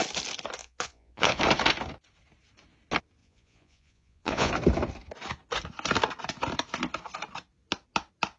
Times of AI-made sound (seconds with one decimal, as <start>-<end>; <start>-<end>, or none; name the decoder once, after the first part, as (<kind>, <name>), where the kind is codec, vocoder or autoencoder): 0.6-1.4 (vocoder, Vocos); 3.2-4.5